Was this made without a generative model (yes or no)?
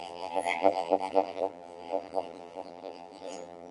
no